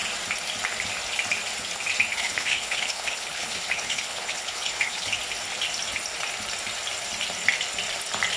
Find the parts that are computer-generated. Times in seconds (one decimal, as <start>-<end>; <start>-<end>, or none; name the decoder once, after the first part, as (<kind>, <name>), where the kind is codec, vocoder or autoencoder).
2.1-5.1 (codec, HILCodec)